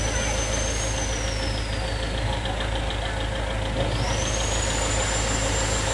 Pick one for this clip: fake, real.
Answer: real